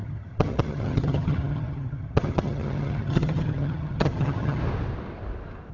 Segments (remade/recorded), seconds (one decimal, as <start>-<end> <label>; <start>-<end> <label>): 0.0-4.6 remade; 4.6-5.7 recorded